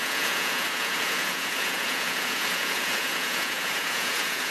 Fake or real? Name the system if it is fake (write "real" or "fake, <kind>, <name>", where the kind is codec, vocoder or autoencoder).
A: fake, vocoder, Vocos